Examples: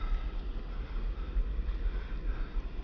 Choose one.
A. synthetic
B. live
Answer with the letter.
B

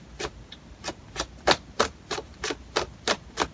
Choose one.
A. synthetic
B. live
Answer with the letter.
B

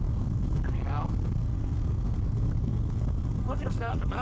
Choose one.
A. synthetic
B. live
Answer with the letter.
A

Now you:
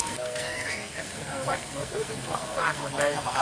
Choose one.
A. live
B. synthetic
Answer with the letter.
B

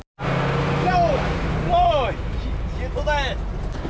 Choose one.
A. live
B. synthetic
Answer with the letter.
A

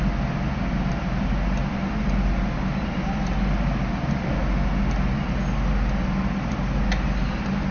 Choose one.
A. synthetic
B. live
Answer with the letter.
B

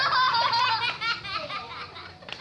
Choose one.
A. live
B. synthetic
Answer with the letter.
A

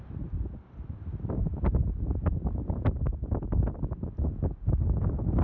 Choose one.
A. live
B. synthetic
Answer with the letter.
A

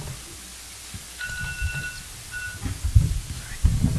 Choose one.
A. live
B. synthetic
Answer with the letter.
A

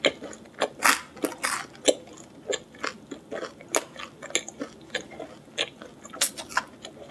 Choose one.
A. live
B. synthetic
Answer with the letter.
A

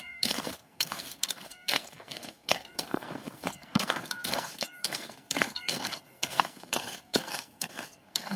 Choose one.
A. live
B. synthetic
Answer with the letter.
B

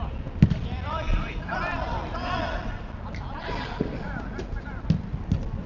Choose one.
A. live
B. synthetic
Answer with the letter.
A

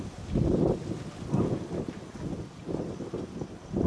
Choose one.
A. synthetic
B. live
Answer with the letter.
B